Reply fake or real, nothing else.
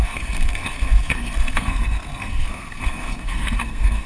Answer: fake